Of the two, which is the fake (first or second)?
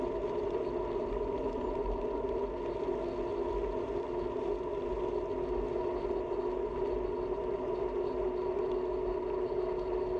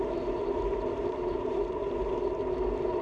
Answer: second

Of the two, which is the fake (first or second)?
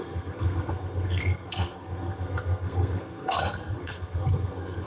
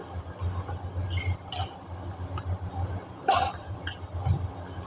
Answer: first